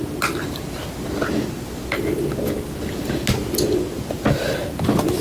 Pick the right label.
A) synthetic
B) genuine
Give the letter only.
B